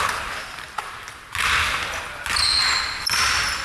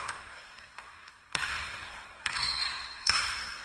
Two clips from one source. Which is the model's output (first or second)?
second